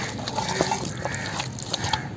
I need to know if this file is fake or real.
real